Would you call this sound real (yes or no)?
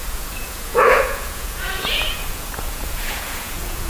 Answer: no